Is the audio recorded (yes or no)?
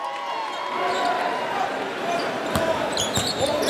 yes